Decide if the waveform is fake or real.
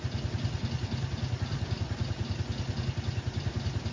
real